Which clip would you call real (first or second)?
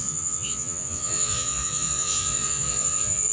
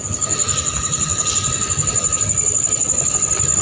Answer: second